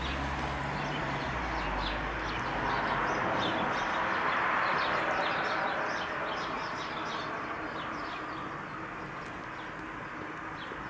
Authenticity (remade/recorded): recorded